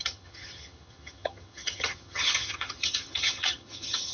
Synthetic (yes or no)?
yes